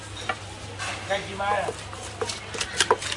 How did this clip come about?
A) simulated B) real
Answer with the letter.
B